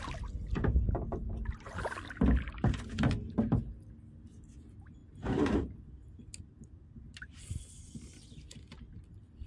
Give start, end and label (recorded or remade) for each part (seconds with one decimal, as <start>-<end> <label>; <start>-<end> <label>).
0.0-9.5 recorded